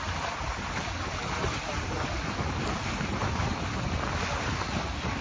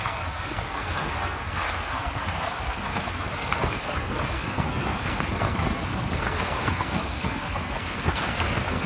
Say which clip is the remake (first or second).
second